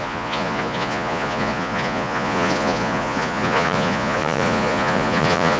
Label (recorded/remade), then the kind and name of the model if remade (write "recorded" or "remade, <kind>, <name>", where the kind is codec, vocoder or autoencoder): remade, vocoder, Vocos